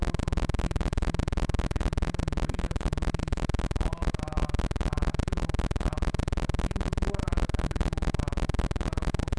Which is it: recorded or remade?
remade